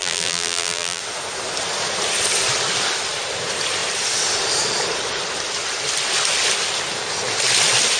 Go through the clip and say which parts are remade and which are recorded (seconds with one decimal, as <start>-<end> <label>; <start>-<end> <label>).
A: 0.0-1.0 remade; 1.0-8.0 recorded